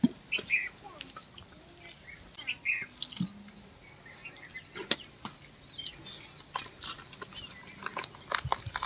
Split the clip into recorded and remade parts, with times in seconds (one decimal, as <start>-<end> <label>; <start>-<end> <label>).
0.0-8.9 recorded